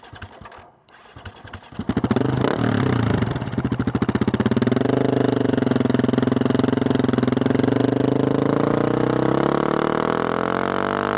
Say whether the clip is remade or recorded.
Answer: recorded